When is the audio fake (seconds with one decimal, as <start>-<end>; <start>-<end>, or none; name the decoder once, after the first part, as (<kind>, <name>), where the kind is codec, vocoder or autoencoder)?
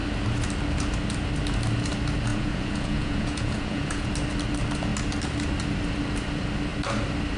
2.3-4.1 (vocoder, Vocos)